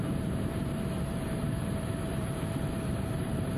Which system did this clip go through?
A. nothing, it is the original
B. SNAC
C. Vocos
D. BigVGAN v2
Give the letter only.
D